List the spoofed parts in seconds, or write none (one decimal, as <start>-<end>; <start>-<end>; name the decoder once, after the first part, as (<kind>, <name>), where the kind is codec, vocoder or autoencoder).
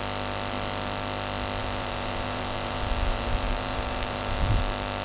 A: 1.6-4.6 (vocoder, BigVGAN v2)